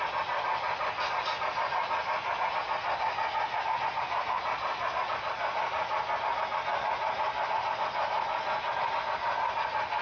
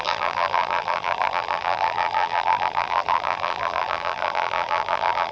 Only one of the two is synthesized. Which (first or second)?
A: second